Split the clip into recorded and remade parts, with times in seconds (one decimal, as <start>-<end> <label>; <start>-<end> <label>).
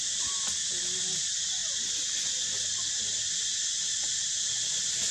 0.0-5.1 recorded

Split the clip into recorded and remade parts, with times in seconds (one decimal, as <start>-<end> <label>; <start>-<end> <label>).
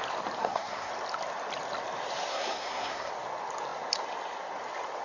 0.0-0.4 recorded; 0.4-0.9 remade; 0.9-2.3 recorded; 2.3-3.1 remade; 3.1-5.0 recorded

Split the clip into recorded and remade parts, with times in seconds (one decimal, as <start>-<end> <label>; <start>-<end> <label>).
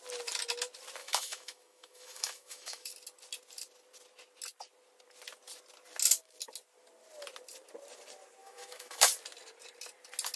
0.0-1.0 recorded; 1.0-2.9 remade; 2.9-8.4 recorded; 8.4-9.1 remade; 9.1-10.4 recorded